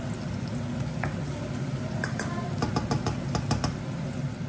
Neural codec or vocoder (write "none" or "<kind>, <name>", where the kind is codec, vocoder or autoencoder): none